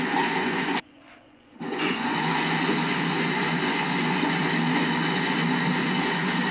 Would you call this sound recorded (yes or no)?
no